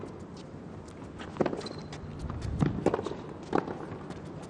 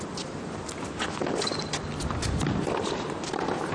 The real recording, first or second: first